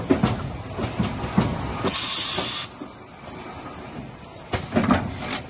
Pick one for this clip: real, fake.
real